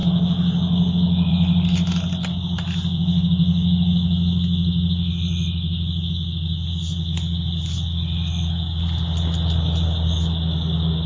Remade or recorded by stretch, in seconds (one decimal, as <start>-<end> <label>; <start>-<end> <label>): 0.0-11.1 recorded